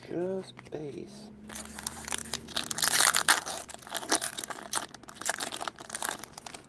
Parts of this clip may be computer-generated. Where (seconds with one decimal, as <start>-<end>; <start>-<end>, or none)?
0.0-2.2; 5.8-6.7